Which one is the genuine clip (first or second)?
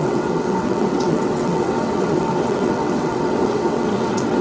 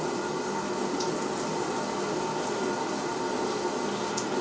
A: second